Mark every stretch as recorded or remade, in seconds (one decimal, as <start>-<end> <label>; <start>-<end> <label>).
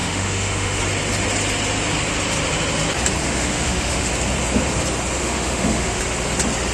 0.0-0.8 remade; 0.8-3.2 recorded; 3.2-4.1 remade; 4.1-5.2 recorded; 5.2-6.0 remade; 6.0-6.7 recorded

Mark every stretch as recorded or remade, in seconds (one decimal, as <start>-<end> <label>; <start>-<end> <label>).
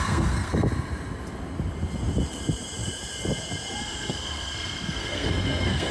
0.0-0.5 remade; 0.5-3.8 recorded; 3.8-5.9 remade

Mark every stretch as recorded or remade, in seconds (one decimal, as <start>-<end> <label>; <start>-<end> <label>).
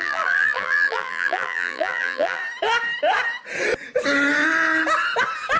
0.0-2.4 remade; 2.4-5.6 recorded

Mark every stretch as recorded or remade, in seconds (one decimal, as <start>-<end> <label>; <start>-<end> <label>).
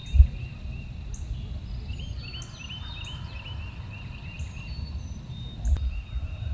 0.0-6.5 recorded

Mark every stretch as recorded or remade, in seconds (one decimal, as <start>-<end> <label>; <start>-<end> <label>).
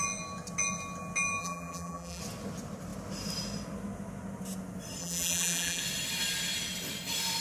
0.0-1.4 recorded; 1.4-2.2 remade; 2.2-5.0 recorded; 5.0-5.8 remade; 5.8-7.4 recorded